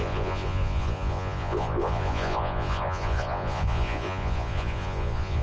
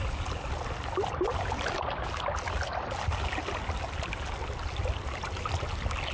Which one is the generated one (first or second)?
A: first